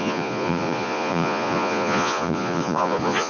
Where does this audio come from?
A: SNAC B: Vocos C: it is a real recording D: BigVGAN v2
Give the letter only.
B